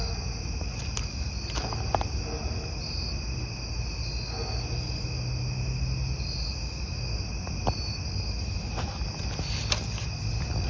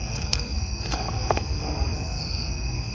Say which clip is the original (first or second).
first